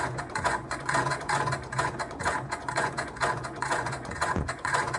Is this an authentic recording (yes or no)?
no